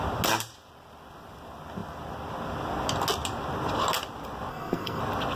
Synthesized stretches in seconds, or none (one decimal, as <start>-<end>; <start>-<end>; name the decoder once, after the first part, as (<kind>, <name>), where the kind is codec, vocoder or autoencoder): 4.5-5.0 (codec, SNAC)